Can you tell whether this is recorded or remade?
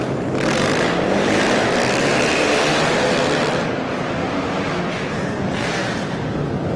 recorded